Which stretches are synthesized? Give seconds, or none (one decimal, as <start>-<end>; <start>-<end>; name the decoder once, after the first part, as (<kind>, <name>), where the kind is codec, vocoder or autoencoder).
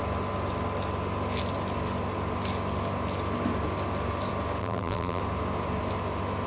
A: 4.6-5.2 (vocoder, BigVGAN v2)